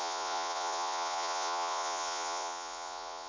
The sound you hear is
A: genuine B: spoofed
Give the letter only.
B